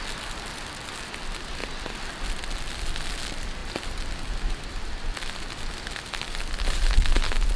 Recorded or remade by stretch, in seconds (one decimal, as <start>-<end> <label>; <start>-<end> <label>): 0.0-1.6 recorded; 1.6-2.2 remade; 2.2-7.6 recorded